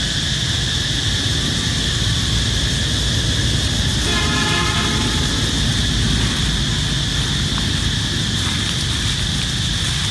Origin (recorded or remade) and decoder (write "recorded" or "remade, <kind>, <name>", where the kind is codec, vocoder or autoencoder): recorded